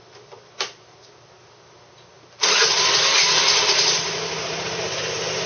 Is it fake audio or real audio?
real